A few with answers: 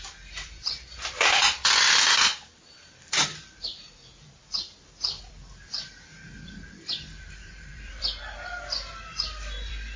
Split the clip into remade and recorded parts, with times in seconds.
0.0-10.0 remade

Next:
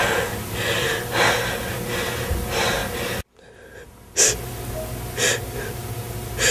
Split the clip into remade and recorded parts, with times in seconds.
0.0-6.5 recorded

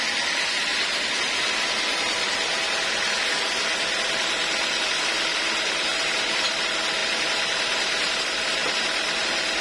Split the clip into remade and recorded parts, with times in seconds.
0.0-9.6 recorded